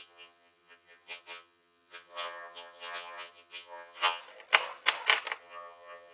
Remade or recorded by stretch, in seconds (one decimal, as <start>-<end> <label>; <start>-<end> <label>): 0.0-4.2 remade; 4.2-5.4 recorded; 5.4-6.1 remade